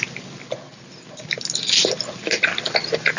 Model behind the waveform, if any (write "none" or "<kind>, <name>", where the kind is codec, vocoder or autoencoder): none